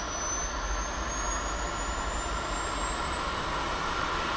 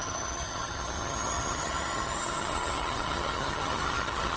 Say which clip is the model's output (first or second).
second